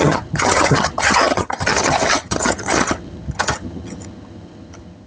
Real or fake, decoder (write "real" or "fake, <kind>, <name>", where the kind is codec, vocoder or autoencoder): fake, vocoder, HiFi-GAN